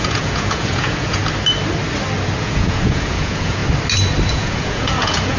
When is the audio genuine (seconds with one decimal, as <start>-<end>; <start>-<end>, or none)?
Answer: 1.2-2.4; 3.6-4.3